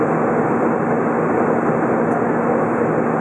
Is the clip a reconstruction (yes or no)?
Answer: no